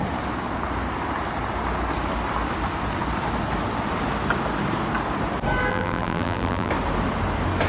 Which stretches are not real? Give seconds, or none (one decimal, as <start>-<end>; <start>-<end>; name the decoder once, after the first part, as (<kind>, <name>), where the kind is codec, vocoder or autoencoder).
5.7-6.7 (vocoder, BigVGAN v2)